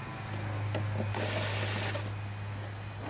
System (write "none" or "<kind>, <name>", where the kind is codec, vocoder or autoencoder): none